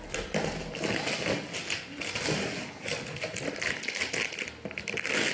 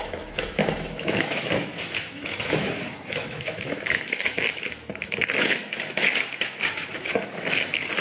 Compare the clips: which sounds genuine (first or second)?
first